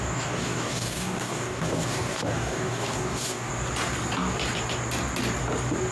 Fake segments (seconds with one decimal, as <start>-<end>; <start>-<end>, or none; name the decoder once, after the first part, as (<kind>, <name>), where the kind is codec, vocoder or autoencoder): 0.0-3.5 (codec, DAC)